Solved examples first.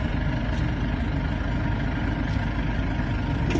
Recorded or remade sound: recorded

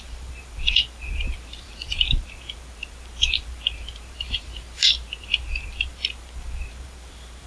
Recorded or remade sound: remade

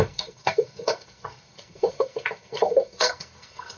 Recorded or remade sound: remade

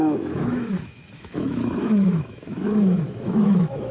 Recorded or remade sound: remade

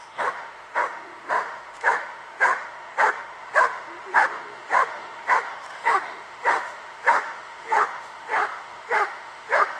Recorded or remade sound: remade